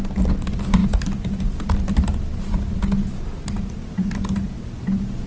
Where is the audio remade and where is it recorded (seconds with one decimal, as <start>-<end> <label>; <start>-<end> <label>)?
0.0-5.3 recorded